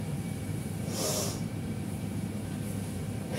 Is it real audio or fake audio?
fake